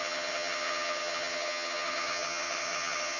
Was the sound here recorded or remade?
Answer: remade